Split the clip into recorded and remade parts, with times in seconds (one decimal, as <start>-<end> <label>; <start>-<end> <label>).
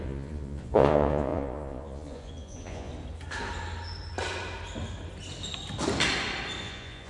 0.0-2.9 remade; 2.9-6.6 recorded; 6.6-7.1 remade